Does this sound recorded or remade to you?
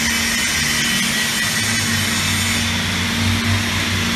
recorded